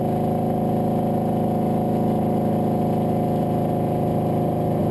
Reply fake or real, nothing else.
real